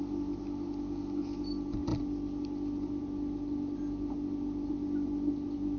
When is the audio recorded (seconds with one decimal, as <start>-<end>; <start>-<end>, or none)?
0.0-5.8